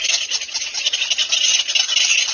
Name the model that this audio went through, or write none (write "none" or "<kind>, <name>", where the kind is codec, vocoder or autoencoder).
none